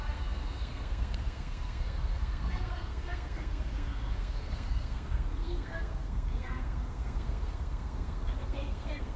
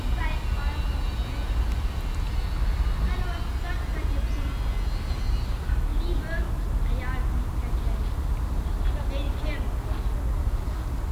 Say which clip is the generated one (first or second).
first